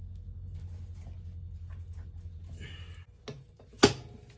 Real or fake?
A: real